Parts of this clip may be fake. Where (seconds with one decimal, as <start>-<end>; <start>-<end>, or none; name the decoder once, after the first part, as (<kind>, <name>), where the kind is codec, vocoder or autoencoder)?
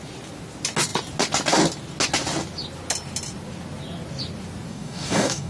4.7-5.5 (codec, DAC)